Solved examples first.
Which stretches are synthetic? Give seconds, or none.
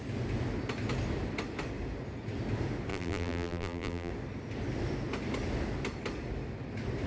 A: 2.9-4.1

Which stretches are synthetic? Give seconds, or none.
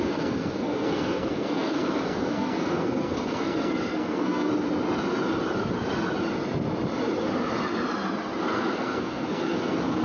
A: 0.0-4.5; 8.4-10.0